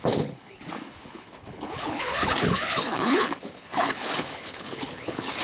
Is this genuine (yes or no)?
no